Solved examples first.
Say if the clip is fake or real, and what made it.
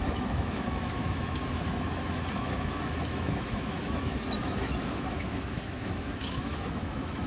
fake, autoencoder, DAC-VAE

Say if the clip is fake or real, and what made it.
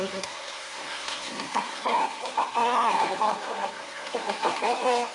fake, codec, SNAC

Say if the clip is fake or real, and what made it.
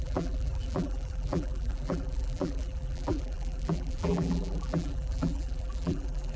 fake, vocoder, BigVGAN v2